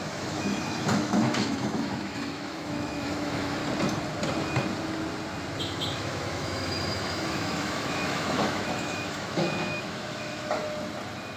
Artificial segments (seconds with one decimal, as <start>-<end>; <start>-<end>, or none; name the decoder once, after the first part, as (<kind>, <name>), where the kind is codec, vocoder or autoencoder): 0.0-3.6 (autoencoder, DAC-VAE); 5.6-10.6